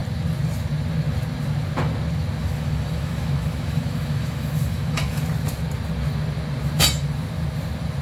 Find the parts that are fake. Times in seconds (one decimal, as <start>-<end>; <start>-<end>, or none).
2.4-5.2